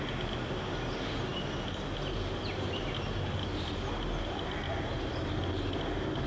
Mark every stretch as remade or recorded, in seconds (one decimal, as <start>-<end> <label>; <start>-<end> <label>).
0.0-6.3 recorded